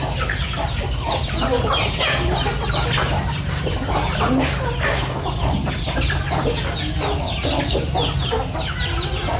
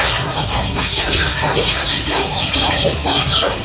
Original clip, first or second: first